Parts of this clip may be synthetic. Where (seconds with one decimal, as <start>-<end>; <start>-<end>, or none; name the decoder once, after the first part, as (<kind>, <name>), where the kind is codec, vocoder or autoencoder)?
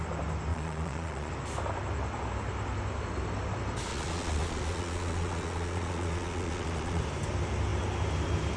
0.5-1.3 (vocoder, Vocos); 3.9-7.0